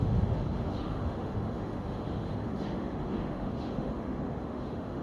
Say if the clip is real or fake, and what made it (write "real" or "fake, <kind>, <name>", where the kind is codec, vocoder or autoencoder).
fake, autoencoder, DAC-VAE